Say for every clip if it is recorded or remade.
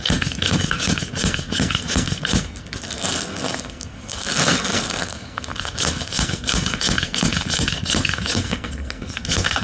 remade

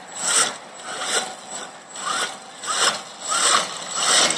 recorded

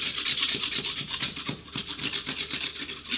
recorded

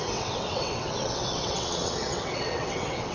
remade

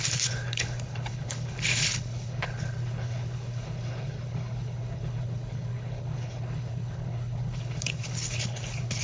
remade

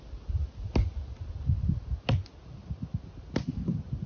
recorded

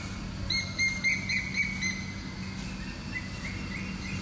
recorded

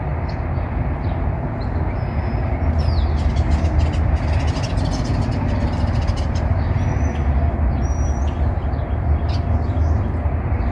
recorded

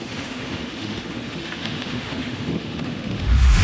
remade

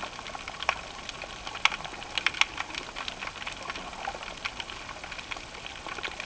recorded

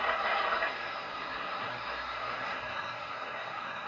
remade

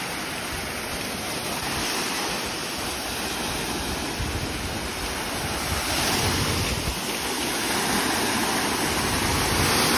recorded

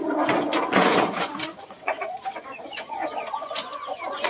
remade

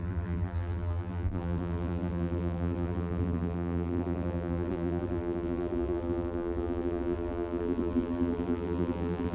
remade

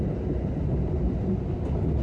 recorded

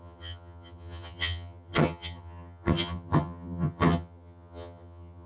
remade